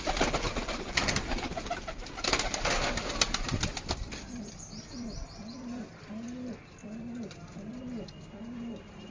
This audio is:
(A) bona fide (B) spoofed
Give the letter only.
A